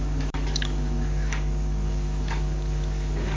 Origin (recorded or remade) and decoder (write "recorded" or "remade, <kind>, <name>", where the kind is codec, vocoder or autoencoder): remade, codec, DAC